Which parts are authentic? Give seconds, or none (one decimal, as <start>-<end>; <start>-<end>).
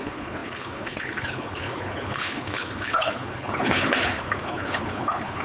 none